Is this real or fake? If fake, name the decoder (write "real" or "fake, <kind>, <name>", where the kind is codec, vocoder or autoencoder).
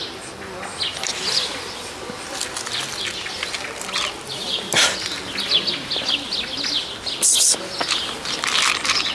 real